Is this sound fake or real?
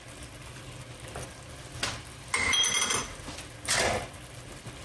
real